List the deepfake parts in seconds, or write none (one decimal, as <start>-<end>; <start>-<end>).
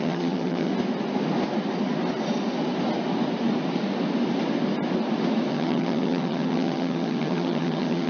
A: 0.0-0.7; 5.5-8.1